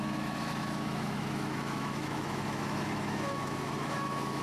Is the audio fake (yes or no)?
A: yes